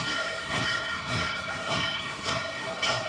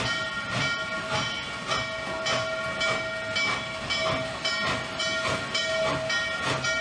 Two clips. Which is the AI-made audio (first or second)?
first